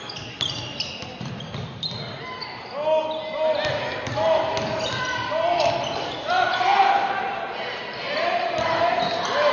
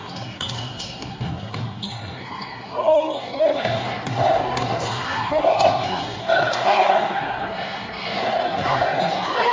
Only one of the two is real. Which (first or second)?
first